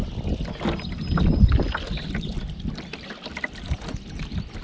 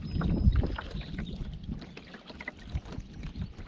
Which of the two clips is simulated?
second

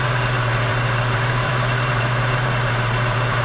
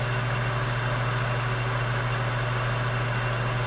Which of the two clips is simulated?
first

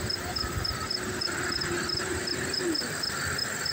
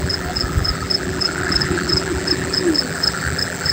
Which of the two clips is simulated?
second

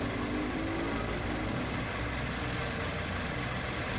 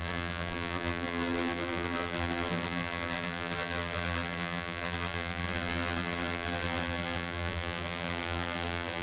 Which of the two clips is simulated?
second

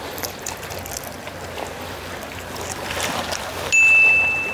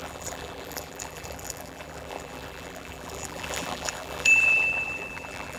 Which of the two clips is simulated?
second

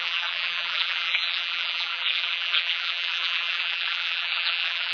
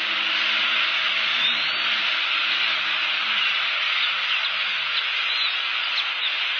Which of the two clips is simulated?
first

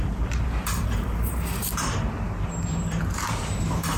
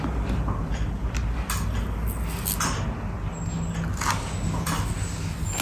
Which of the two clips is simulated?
first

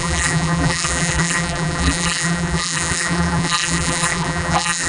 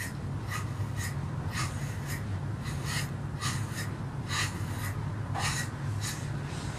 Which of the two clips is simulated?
first